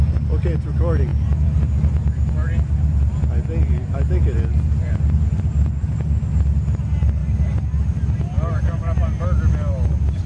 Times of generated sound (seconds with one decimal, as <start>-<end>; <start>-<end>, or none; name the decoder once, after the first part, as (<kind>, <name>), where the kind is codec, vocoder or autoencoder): none